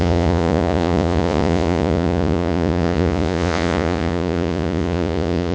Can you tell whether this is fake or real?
fake